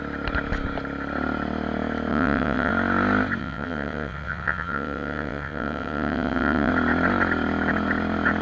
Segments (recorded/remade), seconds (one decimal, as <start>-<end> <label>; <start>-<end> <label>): 0.0-2.1 recorded; 2.1-2.7 remade; 2.7-3.4 recorded; 3.4-6.7 remade; 6.7-8.4 recorded